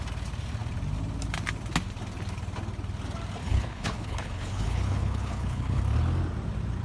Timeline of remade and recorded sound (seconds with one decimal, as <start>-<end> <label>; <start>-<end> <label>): 0.0-3.4 recorded; 3.4-5.8 remade; 5.8-6.8 recorded